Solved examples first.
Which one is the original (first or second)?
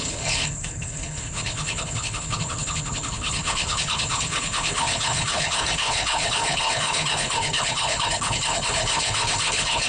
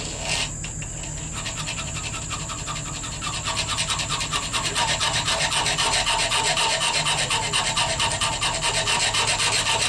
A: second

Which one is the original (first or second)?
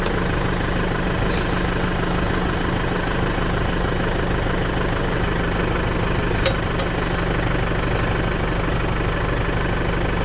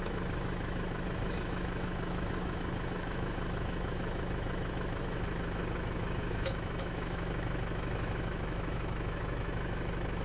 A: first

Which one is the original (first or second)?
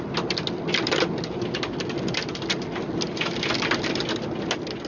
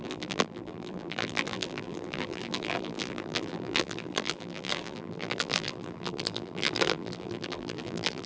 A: first